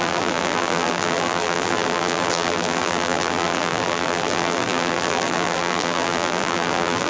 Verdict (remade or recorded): remade